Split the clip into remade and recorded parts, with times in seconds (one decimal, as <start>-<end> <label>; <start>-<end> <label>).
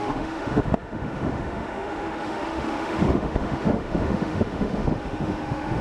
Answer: 0.0-5.8 remade